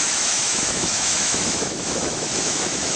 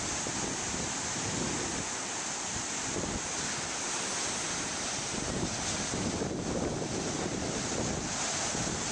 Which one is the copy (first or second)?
first